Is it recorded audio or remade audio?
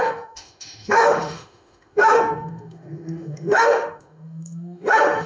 remade